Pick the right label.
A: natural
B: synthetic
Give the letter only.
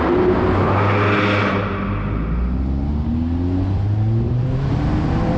A